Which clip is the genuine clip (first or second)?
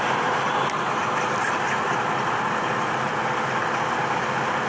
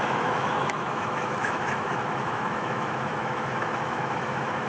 first